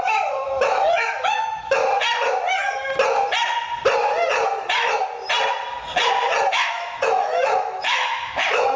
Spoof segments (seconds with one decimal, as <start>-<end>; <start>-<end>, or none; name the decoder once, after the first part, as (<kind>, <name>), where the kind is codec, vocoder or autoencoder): 0.0-1.8 (autoencoder, DAC-VAE); 6.5-8.8